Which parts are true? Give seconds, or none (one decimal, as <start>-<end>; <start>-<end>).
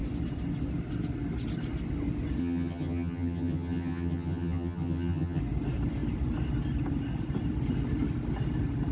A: 0.0-2.4; 5.4-8.9